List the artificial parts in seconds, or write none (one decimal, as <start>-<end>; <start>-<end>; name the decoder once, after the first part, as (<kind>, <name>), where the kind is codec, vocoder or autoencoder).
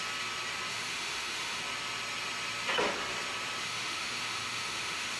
0.7-1.6 (autoencoder, DAC-VAE); 3.6-5.2